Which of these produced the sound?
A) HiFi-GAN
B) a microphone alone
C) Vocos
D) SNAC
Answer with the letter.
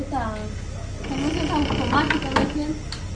B